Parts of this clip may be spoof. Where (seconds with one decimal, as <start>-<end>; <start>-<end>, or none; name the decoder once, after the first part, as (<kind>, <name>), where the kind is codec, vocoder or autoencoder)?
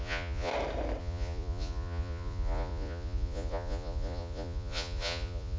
0.0-0.5 (vocoder, Vocos); 1.0-5.6